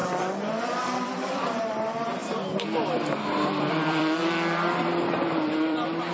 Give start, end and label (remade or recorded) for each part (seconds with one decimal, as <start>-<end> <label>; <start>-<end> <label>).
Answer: 0.0-0.6 recorded; 0.6-2.2 remade; 2.2-3.7 recorded; 3.7-6.1 remade